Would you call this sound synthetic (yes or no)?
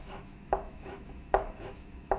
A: yes